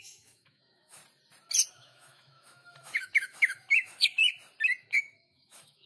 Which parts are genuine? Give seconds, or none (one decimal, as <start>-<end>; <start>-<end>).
1.0-1.7; 4.2-4.8